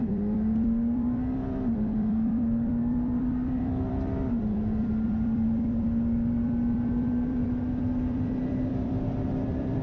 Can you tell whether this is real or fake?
fake